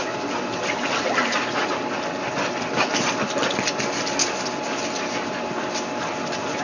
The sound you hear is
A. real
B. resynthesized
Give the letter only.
A